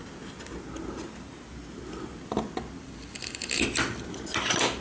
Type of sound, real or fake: real